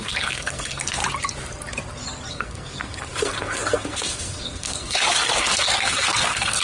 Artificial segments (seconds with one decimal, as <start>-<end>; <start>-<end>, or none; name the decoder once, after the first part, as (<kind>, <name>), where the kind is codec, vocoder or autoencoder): 0.0-1.0 (codec, SNAC); 2.3-6.6